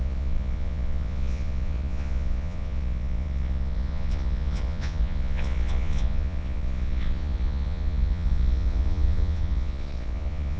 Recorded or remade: remade